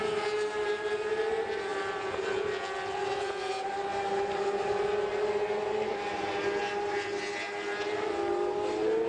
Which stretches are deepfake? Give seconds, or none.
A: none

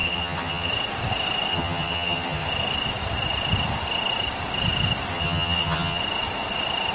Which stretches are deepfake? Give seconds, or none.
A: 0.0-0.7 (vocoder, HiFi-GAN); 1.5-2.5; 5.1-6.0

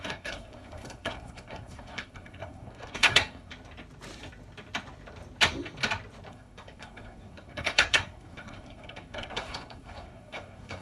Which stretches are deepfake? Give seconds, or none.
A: 0.0-3.5 (codec, SNAC); 6.3-10.8

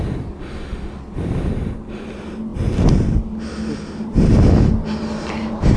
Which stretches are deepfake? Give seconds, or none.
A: none

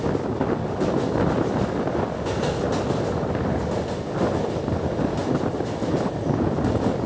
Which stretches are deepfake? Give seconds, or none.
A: none

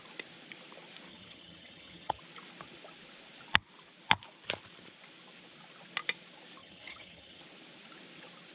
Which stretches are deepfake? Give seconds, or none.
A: 1.1-2.2 (vocoder, HiFi-GAN); 6.6-7.4

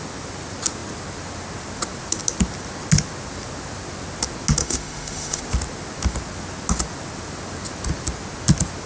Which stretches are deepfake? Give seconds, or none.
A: 4.6-5.4 (autoencoder, DAC-VAE)

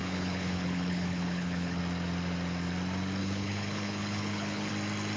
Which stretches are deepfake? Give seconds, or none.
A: 0.0-1.8 (codec, HILCodec); 3.2-4.7